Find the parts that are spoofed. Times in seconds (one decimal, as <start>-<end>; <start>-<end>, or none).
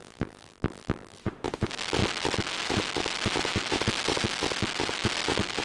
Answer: 0.0-1.2